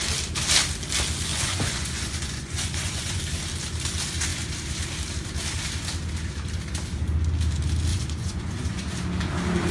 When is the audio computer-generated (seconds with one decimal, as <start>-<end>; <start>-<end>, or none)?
1.3-3.2; 7.9-8.9